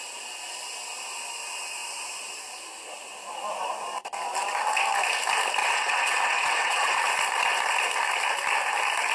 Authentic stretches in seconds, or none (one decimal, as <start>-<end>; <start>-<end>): 0.0-5.6; 7.0-9.1